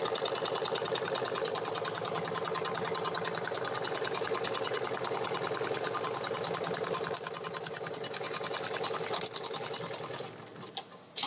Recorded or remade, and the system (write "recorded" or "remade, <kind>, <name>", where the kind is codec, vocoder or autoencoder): recorded